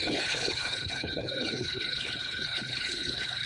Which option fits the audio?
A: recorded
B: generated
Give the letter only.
B